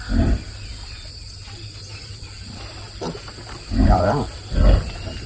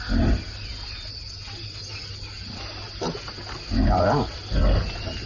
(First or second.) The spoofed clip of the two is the first